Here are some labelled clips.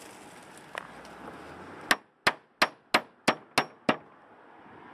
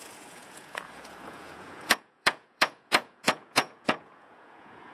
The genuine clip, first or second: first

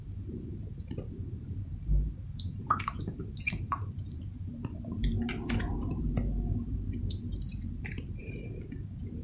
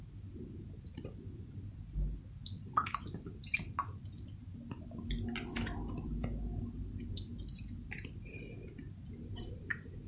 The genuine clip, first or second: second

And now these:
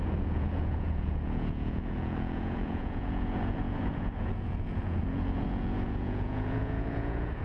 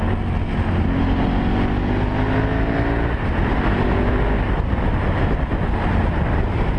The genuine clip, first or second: second